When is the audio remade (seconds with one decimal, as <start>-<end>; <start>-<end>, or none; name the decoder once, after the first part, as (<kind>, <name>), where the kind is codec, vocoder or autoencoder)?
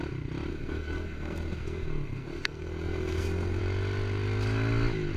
0.5-3.6 (codec, SNAC)